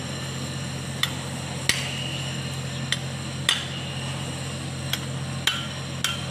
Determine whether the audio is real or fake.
real